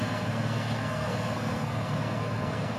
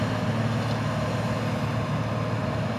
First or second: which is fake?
first